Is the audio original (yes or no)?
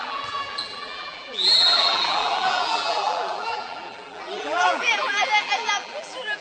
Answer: no